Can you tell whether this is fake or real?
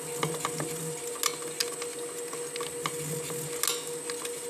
real